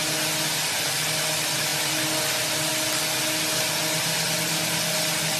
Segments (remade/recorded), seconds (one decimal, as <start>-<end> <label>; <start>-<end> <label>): 0.0-5.4 recorded